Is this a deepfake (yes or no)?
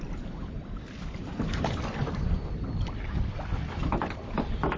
yes